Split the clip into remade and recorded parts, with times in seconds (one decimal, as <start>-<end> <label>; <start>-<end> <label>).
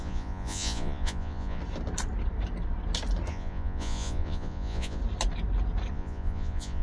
0.0-1.6 remade; 1.6-3.3 recorded; 3.3-5.0 remade; 5.0-5.9 recorded; 5.9-6.8 remade